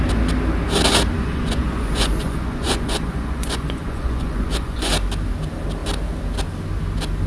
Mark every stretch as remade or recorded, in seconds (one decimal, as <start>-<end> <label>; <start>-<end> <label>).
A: 0.0-1.2 recorded; 1.2-4.9 remade; 4.9-7.3 recorded